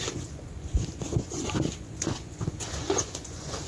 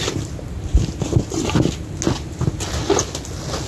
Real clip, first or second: second